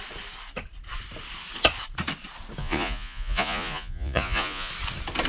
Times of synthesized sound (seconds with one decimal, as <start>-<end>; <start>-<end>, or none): 2.6-4.7